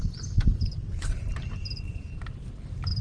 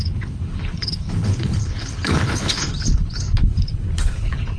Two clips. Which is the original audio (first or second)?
first